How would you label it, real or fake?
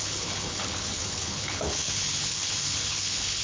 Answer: fake